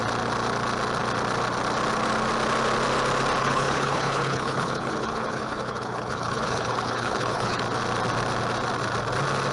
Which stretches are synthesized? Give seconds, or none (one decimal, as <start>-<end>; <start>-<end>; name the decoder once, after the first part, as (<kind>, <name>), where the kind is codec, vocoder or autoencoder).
3.4-7.6 (codec, HILCodec)